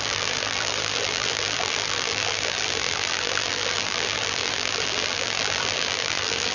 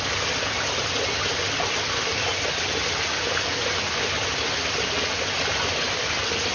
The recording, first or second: second